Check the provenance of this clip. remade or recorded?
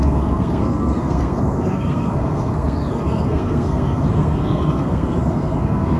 remade